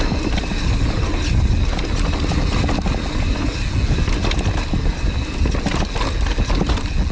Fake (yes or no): no